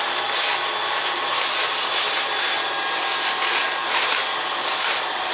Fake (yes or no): no